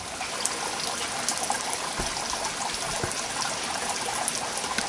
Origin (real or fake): real